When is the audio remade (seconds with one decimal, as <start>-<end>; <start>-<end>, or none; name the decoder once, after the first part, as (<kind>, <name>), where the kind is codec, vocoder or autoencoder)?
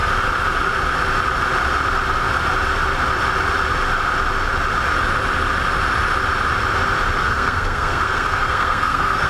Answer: 7.2-9.3 (codec, SNAC)